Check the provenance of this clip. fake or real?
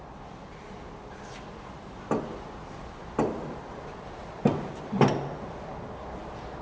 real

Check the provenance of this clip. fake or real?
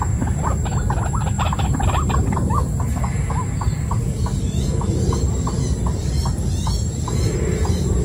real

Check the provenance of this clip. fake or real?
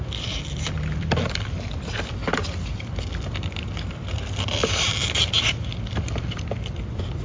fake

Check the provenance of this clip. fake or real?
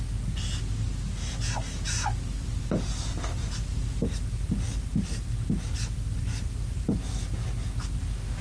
real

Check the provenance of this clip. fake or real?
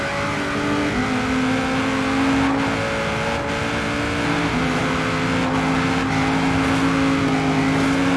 real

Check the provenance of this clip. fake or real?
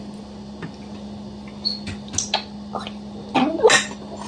real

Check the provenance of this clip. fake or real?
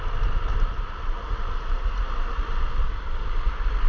real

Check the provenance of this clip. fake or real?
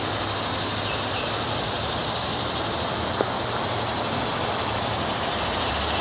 real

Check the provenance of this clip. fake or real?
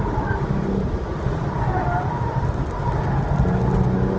real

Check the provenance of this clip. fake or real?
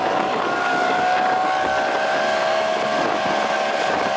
fake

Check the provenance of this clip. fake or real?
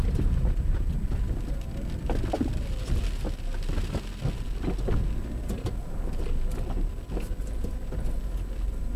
real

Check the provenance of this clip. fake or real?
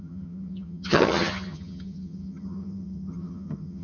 fake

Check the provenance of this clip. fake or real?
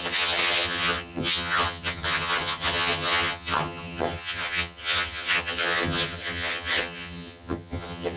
fake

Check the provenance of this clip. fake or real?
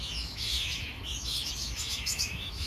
fake